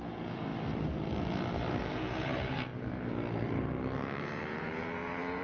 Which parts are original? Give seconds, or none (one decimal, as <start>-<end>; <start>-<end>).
0.5-1.8; 2.7-4.2